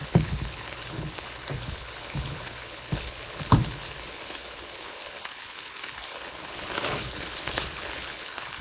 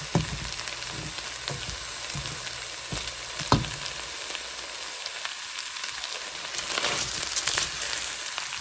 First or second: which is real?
second